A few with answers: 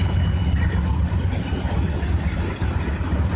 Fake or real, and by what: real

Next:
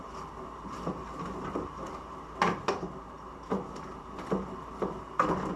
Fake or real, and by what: real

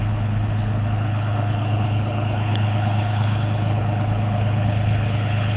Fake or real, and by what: fake, codec, HILCodec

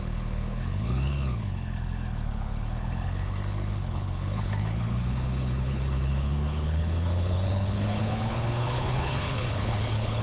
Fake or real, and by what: fake, codec, HILCodec